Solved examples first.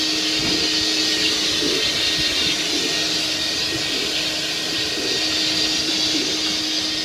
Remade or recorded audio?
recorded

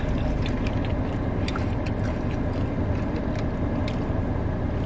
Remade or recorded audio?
recorded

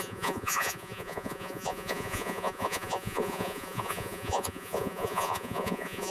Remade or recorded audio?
remade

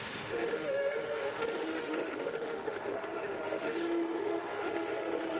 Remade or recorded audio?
remade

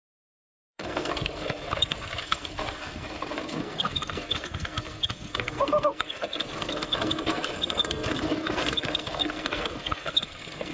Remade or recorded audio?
remade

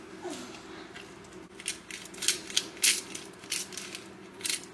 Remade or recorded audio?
recorded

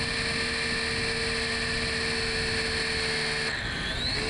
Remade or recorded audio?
recorded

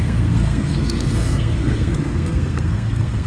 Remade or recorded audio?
remade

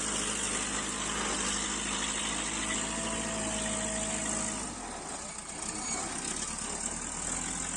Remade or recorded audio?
recorded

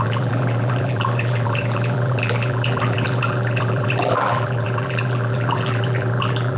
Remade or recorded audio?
remade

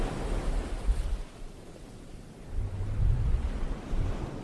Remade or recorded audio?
recorded